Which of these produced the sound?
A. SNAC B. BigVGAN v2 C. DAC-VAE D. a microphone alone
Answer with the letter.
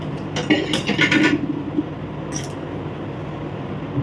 D